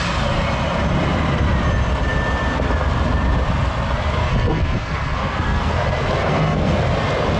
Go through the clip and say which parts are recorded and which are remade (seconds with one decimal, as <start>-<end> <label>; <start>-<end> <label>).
0.0-4.2 recorded; 4.2-5.7 remade; 5.7-6.2 recorded; 6.2-6.8 remade; 6.8-7.4 recorded